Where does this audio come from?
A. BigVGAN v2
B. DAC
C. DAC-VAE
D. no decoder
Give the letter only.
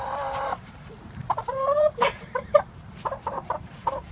A